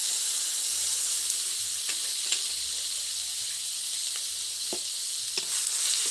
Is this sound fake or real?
real